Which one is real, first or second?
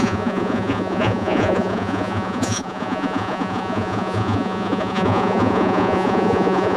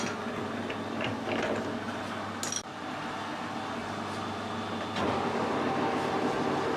second